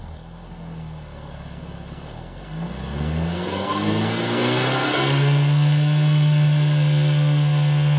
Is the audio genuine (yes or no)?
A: no